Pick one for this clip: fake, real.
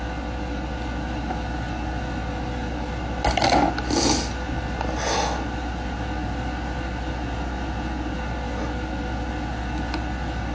real